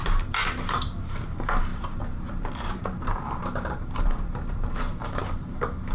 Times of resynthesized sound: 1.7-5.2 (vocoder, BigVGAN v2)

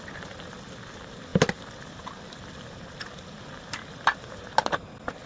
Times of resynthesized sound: none

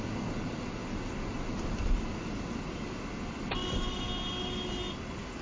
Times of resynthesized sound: 1.3-3.0 (vocoder, BigVGAN v2); 3.6-4.3

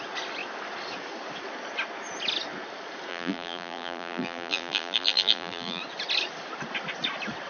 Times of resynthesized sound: 3.1-5.8 (vocoder, BigVGAN v2)

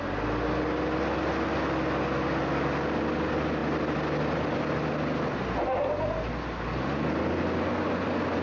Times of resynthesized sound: none

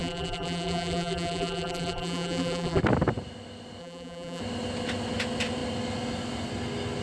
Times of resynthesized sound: 0.0-2.8 (vocoder, BigVGAN v2); 3.8-4.4